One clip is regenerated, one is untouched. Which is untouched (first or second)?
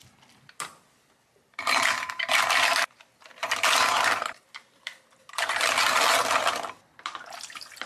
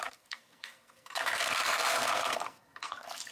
first